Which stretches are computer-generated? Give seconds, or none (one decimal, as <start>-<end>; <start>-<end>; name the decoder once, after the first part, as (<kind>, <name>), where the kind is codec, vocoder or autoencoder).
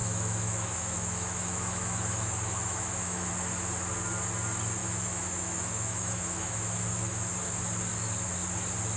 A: 0.0-3.3 (autoencoder, DAC-VAE); 4.8-7.3